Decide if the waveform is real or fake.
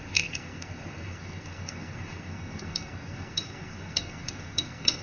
fake